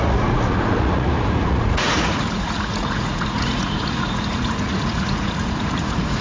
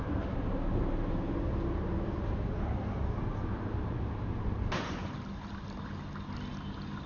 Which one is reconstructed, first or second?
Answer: first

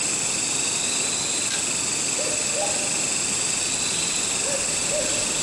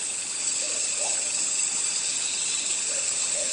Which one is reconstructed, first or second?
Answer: second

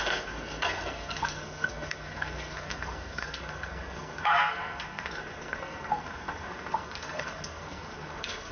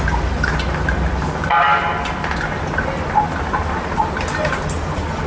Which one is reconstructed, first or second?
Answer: first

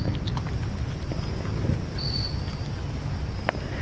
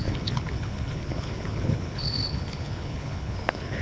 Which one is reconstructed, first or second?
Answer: second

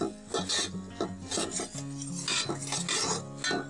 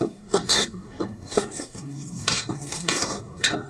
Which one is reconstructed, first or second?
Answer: second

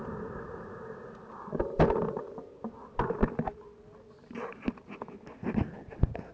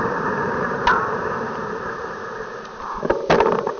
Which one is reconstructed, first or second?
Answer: second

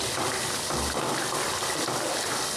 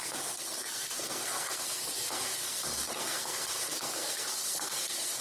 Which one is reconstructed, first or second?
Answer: second